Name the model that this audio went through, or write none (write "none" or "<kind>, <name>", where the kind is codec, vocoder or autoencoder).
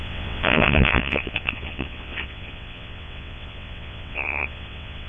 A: vocoder, WaveNeXt